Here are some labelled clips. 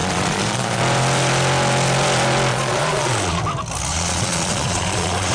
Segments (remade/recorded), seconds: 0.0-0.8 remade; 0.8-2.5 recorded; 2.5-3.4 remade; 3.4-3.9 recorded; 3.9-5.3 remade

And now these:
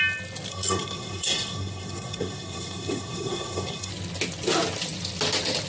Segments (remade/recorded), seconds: 0.0-0.5 recorded; 0.5-3.9 remade; 3.9-5.7 recorded

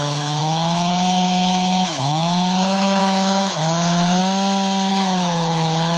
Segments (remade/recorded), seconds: 0.0-4.2 remade; 4.2-4.9 recorded; 4.9-6.0 remade

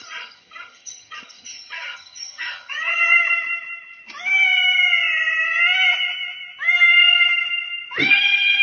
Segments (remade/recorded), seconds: 0.0-3.0 remade; 3.0-8.1 recorded; 8.1-8.6 remade

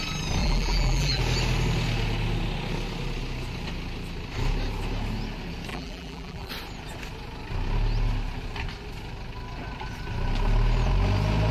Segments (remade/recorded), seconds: 0.0-0.4 recorded; 0.4-1.2 remade; 1.2-5.7 recorded; 5.7-6.5 remade; 6.5-11.5 recorded

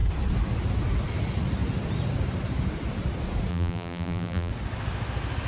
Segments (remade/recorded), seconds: 0.0-3.5 recorded; 3.5-4.5 remade; 4.5-5.5 recorded

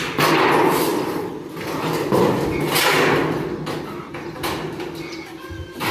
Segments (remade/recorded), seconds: 0.0-5.9 recorded

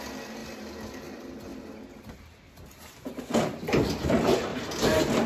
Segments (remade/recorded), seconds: 0.0-5.3 recorded